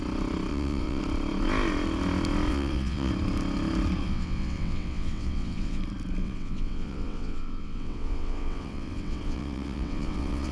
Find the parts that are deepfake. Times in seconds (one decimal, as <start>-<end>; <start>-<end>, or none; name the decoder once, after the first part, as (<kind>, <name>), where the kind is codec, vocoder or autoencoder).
0.5-1.0 (vocoder, WaveNeXt); 2.5-3.1; 4.0-5.8; 6.2-10.5